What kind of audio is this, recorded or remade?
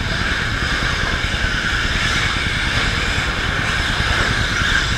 remade